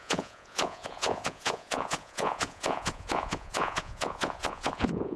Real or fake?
fake